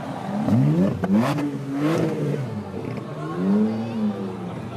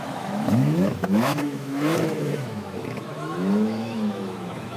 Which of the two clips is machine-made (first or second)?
second